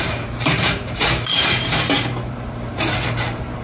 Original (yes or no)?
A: no